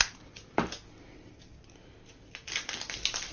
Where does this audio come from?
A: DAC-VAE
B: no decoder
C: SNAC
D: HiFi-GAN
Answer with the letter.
B